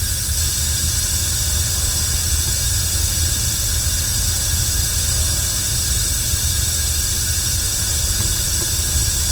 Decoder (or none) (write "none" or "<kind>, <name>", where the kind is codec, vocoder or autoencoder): none